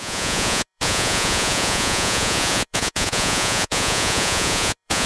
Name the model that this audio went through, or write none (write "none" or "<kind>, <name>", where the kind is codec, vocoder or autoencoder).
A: vocoder, Vocos